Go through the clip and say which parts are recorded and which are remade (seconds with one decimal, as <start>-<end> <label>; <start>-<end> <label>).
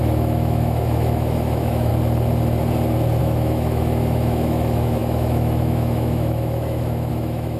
0.0-1.9 remade; 1.9-3.2 recorded; 3.2-7.6 remade